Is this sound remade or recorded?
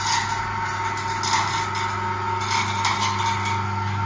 recorded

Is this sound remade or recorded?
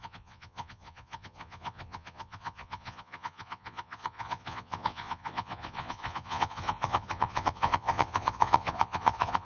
remade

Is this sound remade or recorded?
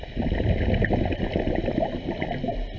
recorded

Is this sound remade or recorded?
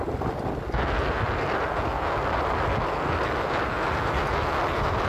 recorded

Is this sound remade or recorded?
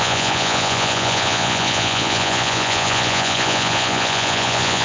remade